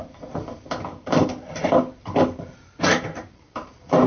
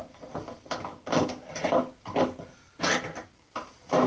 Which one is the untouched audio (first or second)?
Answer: second